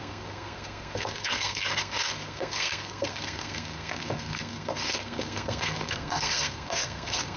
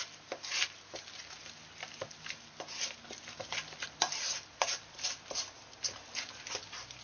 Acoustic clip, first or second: second